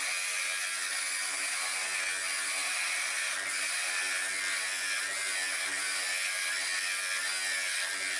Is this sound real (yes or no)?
yes